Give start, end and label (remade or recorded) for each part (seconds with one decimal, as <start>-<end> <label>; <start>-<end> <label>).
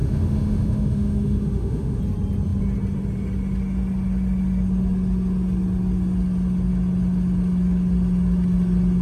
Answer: 0.0-2.0 remade; 2.0-9.0 recorded